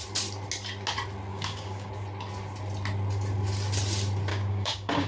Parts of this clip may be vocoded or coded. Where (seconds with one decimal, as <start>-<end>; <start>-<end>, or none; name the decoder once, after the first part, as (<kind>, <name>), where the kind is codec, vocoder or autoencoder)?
1.3-1.9 (codec, DAC); 4.3-5.1